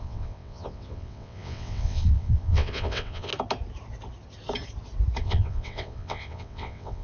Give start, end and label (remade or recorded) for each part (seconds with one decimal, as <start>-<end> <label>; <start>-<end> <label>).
0.0-3.3 remade; 3.3-5.2 recorded; 5.2-7.0 remade